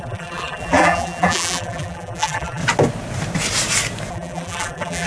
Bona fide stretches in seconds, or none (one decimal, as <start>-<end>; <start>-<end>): 2.6-4.1